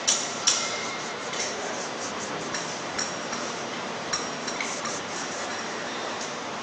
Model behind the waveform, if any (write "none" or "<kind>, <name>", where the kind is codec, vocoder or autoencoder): vocoder, BigVGAN v2